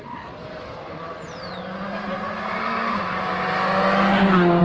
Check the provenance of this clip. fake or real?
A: real